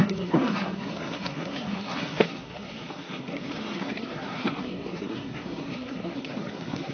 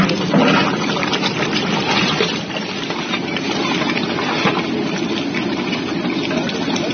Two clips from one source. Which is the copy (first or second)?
first